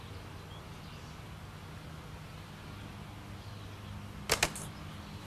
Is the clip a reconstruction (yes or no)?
no